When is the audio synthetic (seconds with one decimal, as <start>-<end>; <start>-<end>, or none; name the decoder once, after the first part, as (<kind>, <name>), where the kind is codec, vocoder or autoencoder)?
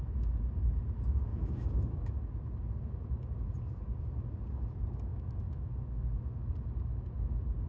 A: 1.3-2.2 (autoencoder, DAC-VAE); 5.1-5.7